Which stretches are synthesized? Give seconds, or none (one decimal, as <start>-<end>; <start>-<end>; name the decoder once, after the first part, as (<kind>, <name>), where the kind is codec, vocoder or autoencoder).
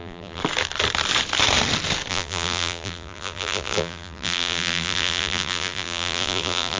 0.0-0.4 (vocoder, BigVGAN v2); 2.1-6.8